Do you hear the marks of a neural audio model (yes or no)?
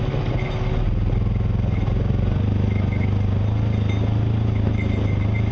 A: no